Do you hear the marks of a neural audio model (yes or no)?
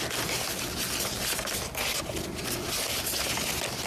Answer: no